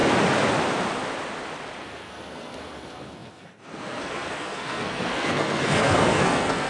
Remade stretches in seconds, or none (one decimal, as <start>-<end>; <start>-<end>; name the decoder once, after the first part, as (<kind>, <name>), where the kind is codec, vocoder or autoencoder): 1.8-6.7 (codec, SNAC)